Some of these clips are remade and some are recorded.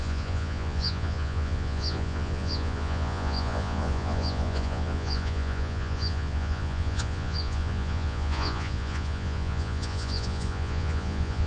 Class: remade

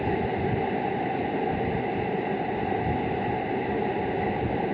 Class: recorded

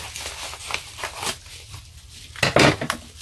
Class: recorded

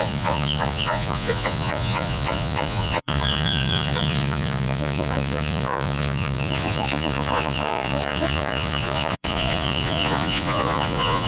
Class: remade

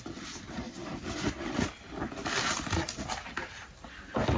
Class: recorded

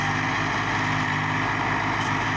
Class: recorded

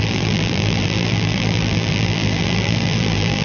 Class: remade